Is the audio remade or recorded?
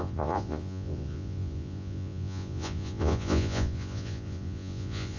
remade